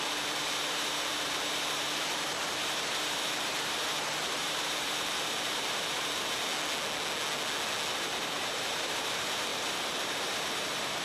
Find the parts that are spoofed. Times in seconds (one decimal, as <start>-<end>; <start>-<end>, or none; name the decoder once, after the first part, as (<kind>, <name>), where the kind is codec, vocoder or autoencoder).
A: 0.0-6.5 (vocoder, BigVGAN v2); 7.9-11.0